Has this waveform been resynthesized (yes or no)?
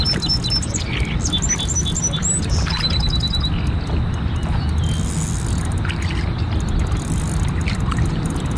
no